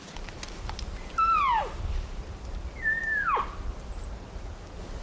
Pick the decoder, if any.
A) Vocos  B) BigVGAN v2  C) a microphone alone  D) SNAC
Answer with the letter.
C